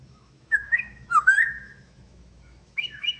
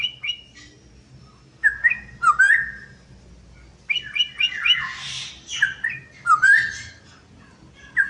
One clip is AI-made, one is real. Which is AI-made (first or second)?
first